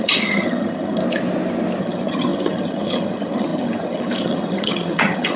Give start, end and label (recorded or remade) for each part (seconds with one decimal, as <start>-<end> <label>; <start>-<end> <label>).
0.0-1.0 remade; 1.0-1.8 recorded; 1.8-5.4 remade

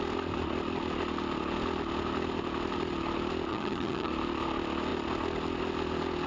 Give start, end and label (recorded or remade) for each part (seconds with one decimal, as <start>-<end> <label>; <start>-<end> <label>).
0.0-3.5 recorded; 3.5-4.1 remade; 4.1-6.3 recorded

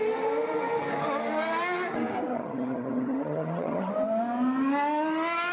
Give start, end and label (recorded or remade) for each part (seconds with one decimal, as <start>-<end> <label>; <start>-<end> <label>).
0.0-2.3 recorded; 2.3-3.9 remade; 3.9-5.5 recorded

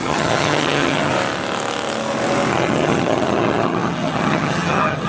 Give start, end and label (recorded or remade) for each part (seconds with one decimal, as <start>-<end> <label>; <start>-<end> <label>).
0.0-1.1 remade; 1.1-2.5 recorded; 2.5-5.1 remade

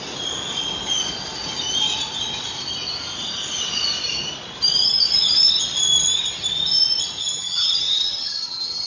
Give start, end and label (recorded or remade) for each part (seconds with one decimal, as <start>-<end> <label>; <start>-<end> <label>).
0.0-7.2 recorded; 7.2-8.9 remade

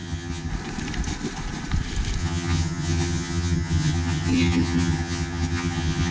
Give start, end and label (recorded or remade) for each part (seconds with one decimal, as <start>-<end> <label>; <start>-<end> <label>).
0.0-0.5 remade; 0.5-2.2 recorded; 2.2-6.1 remade

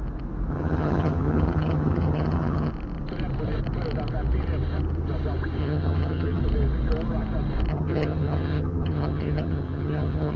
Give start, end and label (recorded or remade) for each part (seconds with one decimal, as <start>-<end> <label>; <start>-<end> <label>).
0.0-0.5 recorded; 0.5-2.7 remade; 2.7-5.6 recorded; 5.6-6.4 remade; 6.4-7.7 recorded; 7.7-10.4 remade